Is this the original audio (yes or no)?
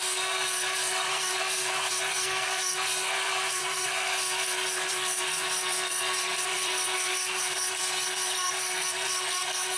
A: no